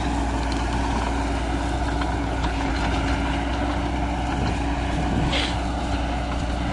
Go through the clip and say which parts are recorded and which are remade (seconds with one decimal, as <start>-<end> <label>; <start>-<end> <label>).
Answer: 0.0-2.2 recorded; 2.2-2.7 remade; 2.7-6.7 recorded